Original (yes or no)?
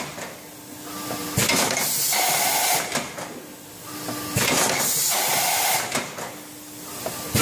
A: yes